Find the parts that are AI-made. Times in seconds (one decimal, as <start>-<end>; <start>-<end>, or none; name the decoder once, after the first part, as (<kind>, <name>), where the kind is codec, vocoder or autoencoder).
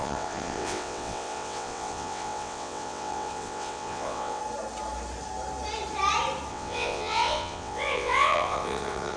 0.0-4.4 (vocoder, WaveNeXt); 6.5-9.2